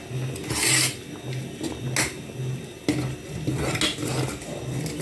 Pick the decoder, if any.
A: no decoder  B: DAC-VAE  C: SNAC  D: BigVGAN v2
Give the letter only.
A